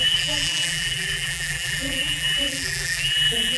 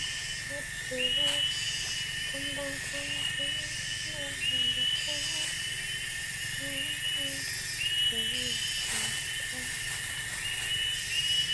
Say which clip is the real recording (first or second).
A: second